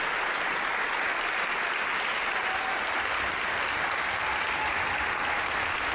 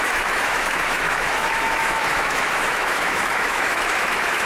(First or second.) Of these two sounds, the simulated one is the second